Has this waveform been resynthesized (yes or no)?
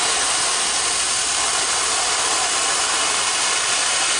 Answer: no